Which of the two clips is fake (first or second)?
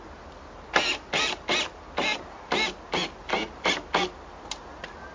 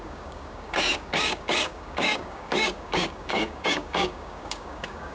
second